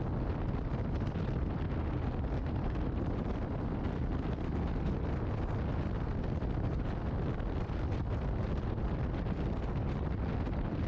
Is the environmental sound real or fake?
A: real